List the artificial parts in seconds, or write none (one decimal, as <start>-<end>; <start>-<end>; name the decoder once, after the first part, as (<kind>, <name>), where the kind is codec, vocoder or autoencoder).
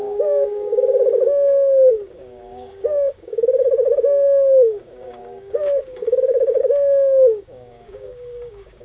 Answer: 0.0-8.8 (codec, DAC)